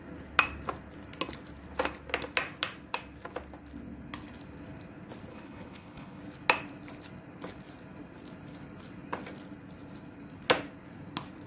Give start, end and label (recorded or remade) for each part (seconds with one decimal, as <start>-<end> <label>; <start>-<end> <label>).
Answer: 0.0-5.3 recorded; 5.3-6.2 remade; 6.2-11.5 recorded